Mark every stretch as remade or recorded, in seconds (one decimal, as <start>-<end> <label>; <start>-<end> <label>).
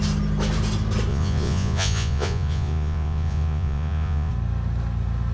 0.0-1.1 recorded; 1.1-4.3 remade; 4.3-5.3 recorded